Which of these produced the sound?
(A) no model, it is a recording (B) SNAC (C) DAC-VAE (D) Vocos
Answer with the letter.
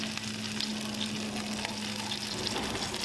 A